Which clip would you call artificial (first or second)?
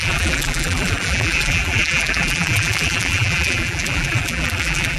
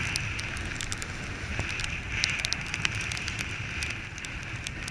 first